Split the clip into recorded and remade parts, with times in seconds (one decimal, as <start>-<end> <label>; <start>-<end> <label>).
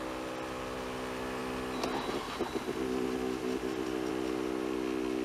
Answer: 0.0-5.2 recorded